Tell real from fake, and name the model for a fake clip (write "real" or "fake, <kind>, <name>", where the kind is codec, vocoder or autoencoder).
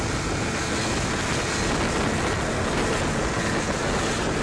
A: real